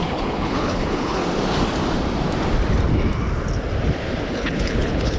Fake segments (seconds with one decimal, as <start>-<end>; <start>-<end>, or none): 0.0-1.2; 4.3-5.2